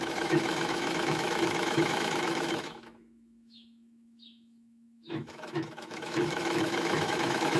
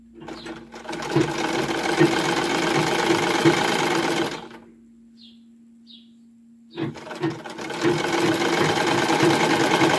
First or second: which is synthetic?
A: first